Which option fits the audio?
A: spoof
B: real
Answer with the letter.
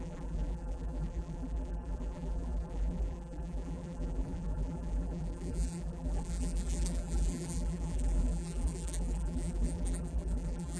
A